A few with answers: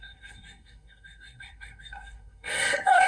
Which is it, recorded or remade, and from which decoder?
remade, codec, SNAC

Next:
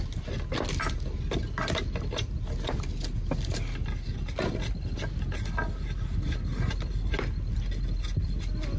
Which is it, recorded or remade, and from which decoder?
recorded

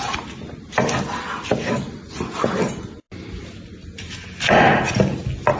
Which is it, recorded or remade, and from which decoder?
recorded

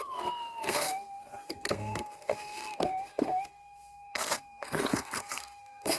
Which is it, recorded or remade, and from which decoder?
remade, codec, SNAC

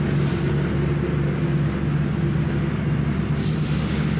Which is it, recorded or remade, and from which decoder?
recorded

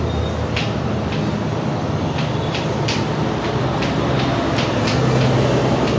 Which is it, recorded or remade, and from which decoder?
recorded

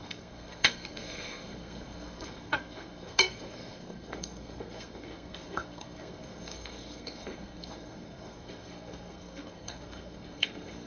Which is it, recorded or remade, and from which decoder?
remade, codec, SNAC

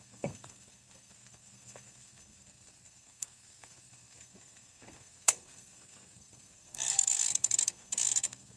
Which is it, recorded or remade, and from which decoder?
remade, codec, SNAC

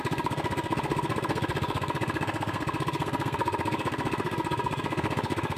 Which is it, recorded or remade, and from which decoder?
remade, codec, SNAC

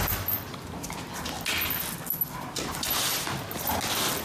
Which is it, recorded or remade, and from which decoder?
recorded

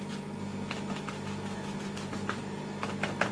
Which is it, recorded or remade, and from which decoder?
recorded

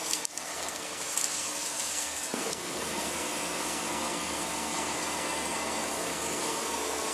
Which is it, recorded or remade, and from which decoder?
remade, codec, SNAC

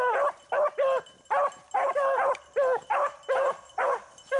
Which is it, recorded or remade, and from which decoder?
recorded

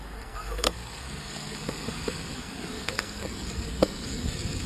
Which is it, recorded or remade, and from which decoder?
remade, codec, SNAC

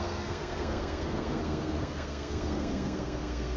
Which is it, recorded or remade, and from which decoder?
remade, codec, SNAC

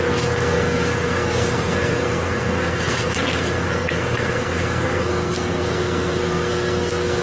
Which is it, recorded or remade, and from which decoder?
remade, codec, SNAC